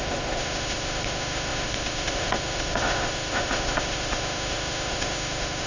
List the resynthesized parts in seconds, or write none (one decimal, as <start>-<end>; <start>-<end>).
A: 0.0-5.7